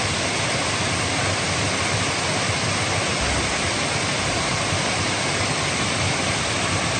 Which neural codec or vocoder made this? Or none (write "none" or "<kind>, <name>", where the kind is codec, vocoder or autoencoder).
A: none